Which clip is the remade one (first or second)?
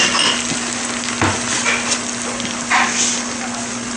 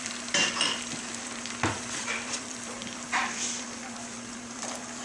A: second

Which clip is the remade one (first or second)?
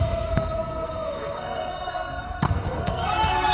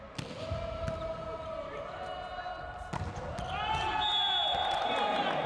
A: first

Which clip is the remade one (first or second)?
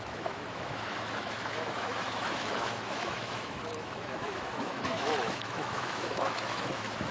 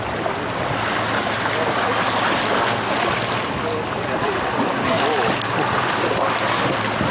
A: first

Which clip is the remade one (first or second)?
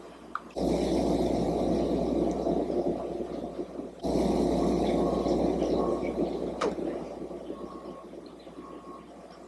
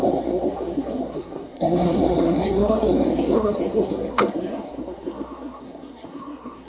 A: second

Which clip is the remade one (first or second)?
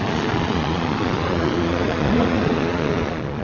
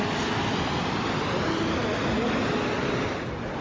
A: first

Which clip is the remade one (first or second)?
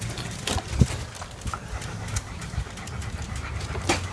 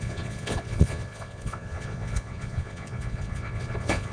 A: second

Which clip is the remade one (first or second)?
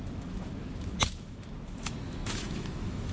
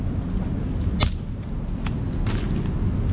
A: first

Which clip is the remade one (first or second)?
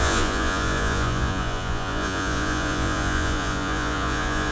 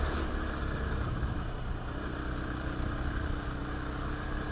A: first